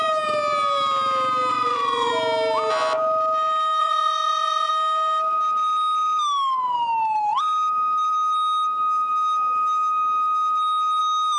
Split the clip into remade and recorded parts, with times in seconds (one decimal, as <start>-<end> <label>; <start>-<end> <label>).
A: 0.0-1.5 recorded; 1.5-2.1 remade; 2.1-3.8 recorded; 3.8-4.7 remade; 4.7-11.4 recorded